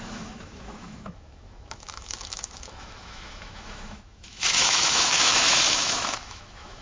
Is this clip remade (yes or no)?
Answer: yes